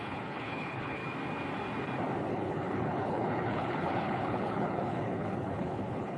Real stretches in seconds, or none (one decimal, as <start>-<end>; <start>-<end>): 1.0-2.3